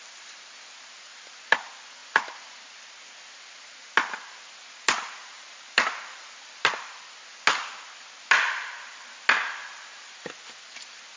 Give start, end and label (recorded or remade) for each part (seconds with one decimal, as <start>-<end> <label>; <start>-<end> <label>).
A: 0.0-11.2 recorded